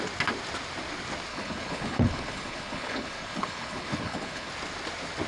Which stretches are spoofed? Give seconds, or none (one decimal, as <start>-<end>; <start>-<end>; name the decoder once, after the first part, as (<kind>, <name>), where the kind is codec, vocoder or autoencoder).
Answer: 1.3-4.5 (codec, HILCodec)